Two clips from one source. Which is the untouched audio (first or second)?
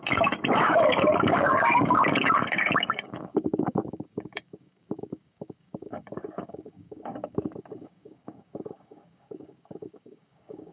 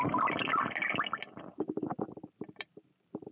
second